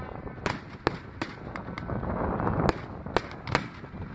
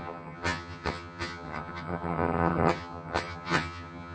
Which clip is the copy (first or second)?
second